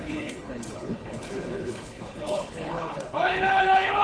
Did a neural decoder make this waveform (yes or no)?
yes